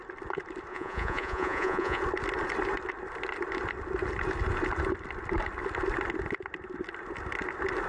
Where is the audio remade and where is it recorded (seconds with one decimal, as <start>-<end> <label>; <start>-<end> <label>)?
0.0-0.7 recorded; 0.7-2.0 remade; 2.0-7.9 recorded